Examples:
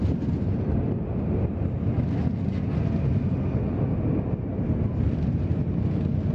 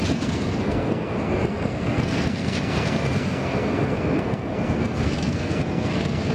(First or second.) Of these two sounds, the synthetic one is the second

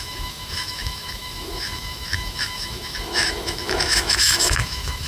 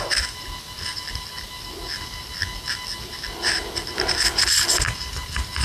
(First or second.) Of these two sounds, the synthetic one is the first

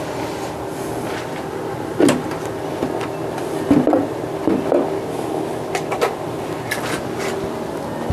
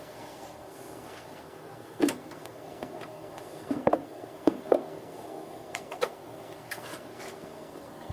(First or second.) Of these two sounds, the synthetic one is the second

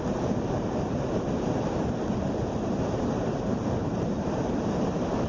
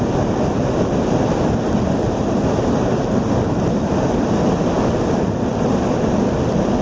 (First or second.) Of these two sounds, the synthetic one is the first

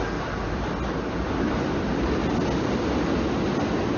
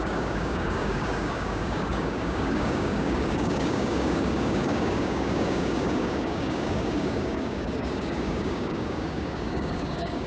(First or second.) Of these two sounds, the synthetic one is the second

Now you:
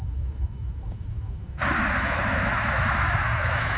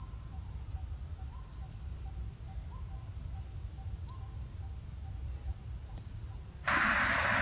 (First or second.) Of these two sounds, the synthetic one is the first